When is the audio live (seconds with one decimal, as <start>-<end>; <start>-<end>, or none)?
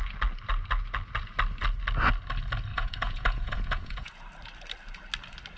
0.0-2.7; 4.2-5.6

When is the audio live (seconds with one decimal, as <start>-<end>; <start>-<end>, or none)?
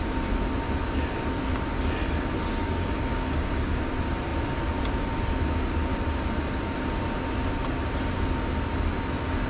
0.0-2.6; 3.8-9.5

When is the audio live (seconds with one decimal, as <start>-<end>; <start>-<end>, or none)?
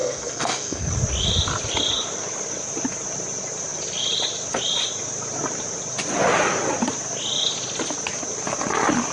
0.9-9.1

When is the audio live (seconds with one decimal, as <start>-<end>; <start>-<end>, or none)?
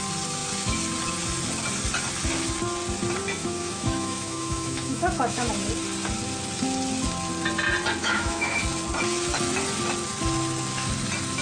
0.0-3.4; 5.5-8.0; 8.6-11.4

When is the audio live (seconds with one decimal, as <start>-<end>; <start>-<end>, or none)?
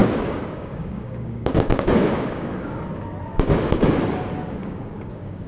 2.8-3.3; 4.0-4.6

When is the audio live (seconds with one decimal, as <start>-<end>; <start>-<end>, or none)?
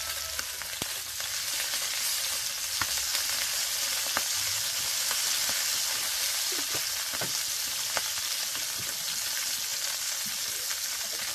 0.0-11.3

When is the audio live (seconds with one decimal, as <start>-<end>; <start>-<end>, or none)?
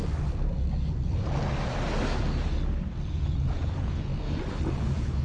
0.0-3.1; 4.1-4.7